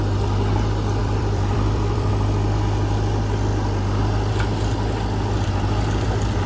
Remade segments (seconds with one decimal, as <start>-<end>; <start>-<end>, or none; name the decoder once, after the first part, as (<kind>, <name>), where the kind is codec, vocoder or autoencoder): 1.0-2.1 (vocoder, BigVGAN v2)